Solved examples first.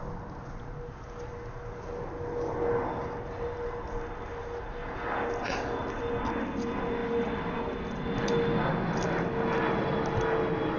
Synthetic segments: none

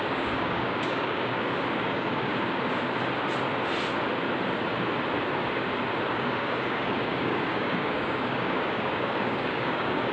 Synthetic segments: 0.0-2.3 (codec, DAC); 6.1-10.1

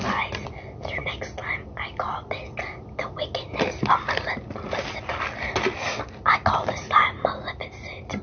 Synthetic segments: none

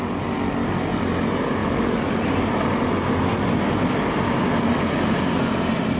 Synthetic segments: none

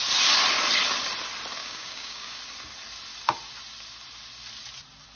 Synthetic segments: 1.6-2.4 (codec, DAC)

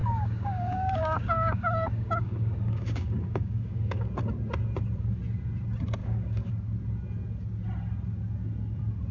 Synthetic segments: 0.0-4.1 (codec, DAC); 6.0-6.5

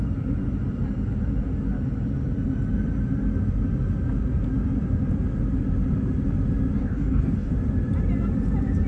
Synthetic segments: 6.8-7.5 (codec, DAC)

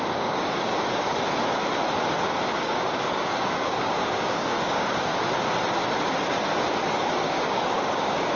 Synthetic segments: 0.0-0.7 (codec, DAC); 2.1-5.1; 6.7-8.4